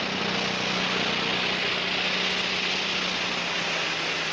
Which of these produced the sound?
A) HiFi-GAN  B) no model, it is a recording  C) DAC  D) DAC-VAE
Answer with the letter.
B